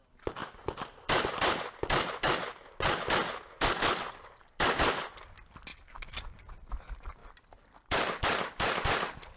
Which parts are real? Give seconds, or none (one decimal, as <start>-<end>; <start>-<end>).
0.0-5.7; 6.4-7.2